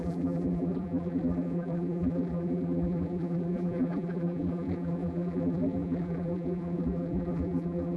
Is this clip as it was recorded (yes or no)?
no